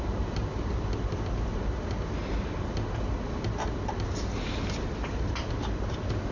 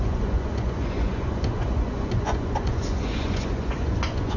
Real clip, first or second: first